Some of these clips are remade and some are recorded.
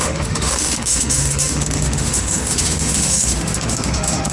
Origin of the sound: remade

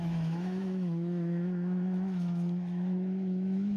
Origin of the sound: remade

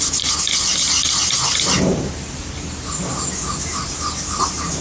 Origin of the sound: recorded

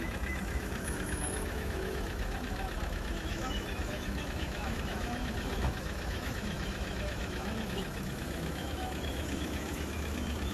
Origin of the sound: remade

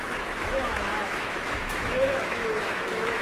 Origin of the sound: remade